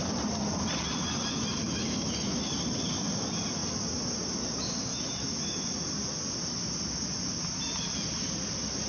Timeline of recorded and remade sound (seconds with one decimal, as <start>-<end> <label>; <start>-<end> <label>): 0.0-1.6 recorded; 1.6-2.5 remade; 2.5-4.9 recorded; 4.9-5.7 remade; 5.7-8.9 recorded